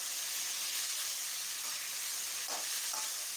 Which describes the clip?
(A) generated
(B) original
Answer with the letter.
B